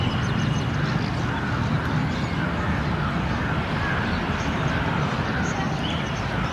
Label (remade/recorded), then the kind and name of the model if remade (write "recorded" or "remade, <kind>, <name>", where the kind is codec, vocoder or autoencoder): recorded